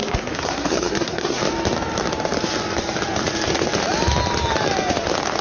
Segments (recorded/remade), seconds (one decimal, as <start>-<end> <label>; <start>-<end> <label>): 0.0-1.4 remade; 1.4-5.4 recorded